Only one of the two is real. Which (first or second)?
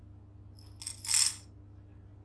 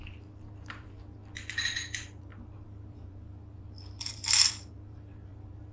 first